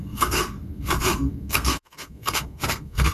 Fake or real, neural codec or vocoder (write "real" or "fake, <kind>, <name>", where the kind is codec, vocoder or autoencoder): fake, codec, SNAC